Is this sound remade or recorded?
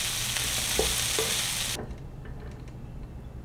recorded